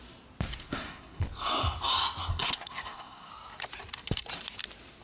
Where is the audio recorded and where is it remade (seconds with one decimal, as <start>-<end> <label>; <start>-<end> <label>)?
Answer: 0.0-0.7 recorded; 0.7-1.2 remade; 1.2-2.3 recorded; 2.3-3.3 remade; 3.3-5.0 recorded